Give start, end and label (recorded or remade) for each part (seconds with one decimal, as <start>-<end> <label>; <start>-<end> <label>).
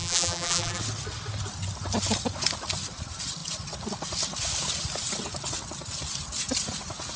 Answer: 0.0-0.8 remade; 0.8-7.2 recorded